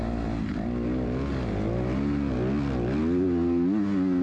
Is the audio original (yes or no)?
yes